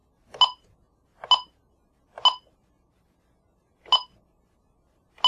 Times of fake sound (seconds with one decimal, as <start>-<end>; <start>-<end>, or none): none